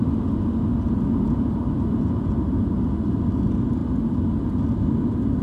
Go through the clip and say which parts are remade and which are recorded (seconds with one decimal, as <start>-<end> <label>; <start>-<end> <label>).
0.0-5.4 recorded